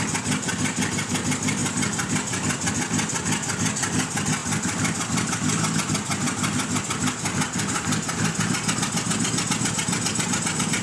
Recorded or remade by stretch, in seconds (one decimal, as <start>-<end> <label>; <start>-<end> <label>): 0.0-1.6 recorded; 1.6-2.7 remade; 2.7-4.4 recorded; 4.4-6.8 remade; 6.8-10.8 recorded